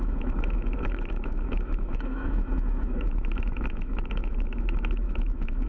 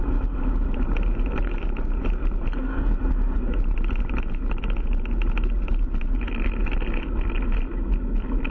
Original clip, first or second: second